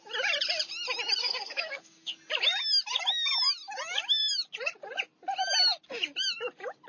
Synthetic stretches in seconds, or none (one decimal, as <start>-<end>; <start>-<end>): 1.2-2.1